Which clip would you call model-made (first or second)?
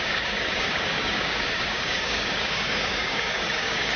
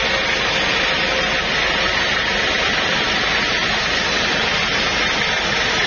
first